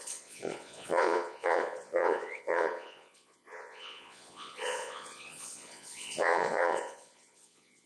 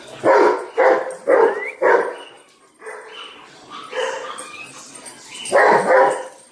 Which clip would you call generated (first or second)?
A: first